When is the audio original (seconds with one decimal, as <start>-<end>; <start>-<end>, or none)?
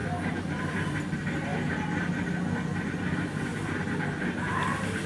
0.0-5.1